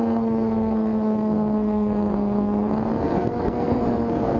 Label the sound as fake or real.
fake